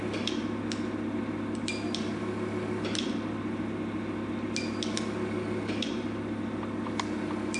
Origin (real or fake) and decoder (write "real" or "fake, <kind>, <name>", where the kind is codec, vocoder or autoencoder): real